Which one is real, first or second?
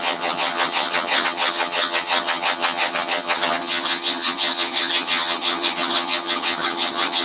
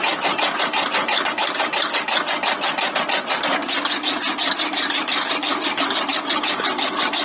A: second